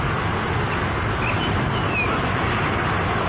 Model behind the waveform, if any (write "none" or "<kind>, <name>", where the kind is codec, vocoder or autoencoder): none